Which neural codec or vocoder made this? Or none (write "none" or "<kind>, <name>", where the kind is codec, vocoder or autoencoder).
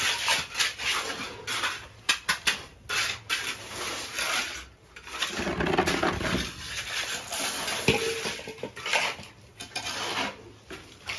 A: none